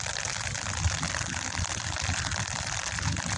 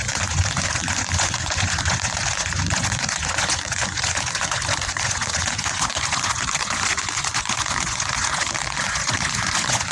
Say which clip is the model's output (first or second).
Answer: second